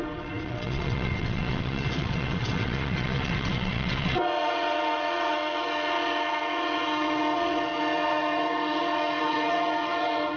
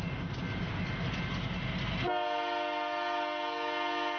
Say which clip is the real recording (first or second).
second